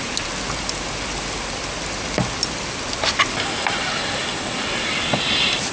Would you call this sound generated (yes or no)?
no